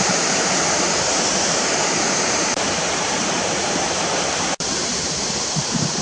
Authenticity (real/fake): fake